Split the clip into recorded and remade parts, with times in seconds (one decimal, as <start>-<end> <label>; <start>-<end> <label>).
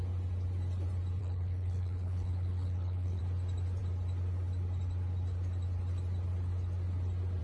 0.0-1.2 recorded; 1.2-3.2 remade; 3.2-7.4 recorded